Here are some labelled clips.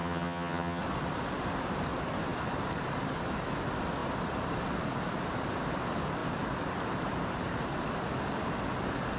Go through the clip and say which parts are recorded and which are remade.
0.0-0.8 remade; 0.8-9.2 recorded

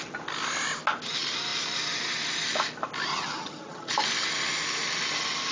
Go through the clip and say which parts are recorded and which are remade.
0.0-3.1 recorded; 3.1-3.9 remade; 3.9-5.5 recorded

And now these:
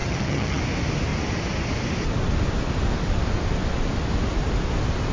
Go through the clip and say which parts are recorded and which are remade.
0.0-0.6 remade; 0.6-5.1 recorded

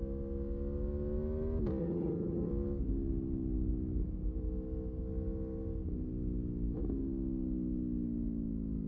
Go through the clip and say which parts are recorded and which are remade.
0.0-1.8 recorded; 1.8-2.5 remade; 2.5-8.9 recorded

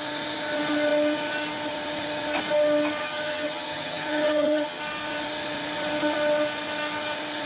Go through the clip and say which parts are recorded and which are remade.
0.0-3.0 recorded; 3.0-4.8 remade; 4.8-7.5 recorded

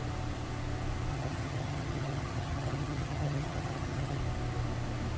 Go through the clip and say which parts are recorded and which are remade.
0.0-1.1 recorded; 1.1-4.2 remade; 4.2-5.2 recorded

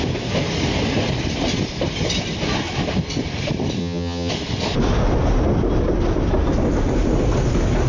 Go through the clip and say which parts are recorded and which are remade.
0.0-3.8 recorded; 3.8-4.3 remade; 4.3-7.9 recorded

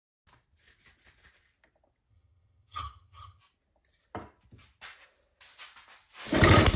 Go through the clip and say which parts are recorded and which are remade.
0.0-2.1 recorded; 2.1-3.4 remade; 3.4-6.8 recorded